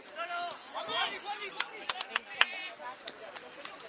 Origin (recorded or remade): recorded